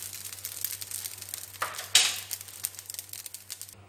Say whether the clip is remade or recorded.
recorded